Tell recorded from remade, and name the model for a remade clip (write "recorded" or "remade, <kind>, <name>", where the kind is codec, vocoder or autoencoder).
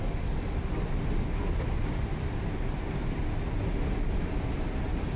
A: recorded